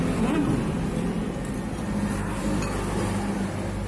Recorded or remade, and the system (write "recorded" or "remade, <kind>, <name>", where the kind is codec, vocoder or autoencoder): remade, vocoder, BigVGAN v2